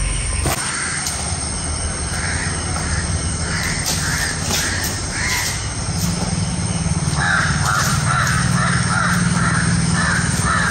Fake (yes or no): no